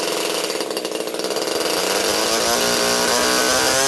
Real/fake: real